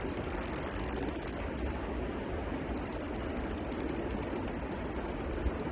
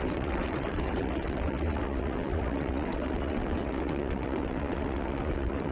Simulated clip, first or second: second